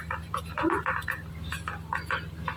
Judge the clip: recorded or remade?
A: recorded